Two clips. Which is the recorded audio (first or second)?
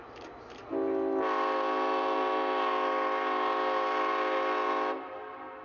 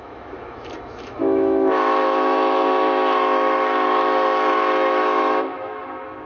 first